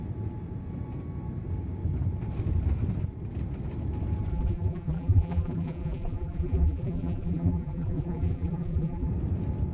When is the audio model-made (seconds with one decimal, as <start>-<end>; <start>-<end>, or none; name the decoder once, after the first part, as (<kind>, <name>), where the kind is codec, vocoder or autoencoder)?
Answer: 4.3-9.1 (vocoder, BigVGAN v2)